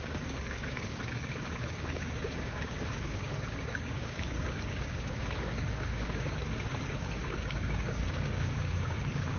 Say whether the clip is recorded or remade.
remade